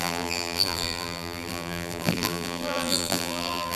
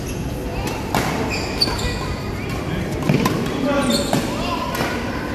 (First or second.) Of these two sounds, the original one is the second